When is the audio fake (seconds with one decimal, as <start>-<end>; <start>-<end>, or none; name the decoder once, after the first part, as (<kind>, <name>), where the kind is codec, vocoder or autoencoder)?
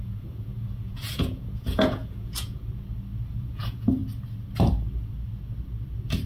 0.0-2.6 (vocoder, Vocos); 3.3-4.0